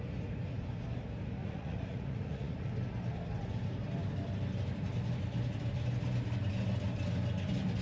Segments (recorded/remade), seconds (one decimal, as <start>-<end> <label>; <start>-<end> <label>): 0.0-1.4 recorded; 1.4-2.7 remade; 2.7-7.8 recorded